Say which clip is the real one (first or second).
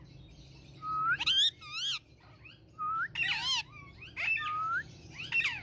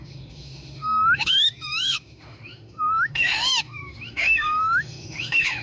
first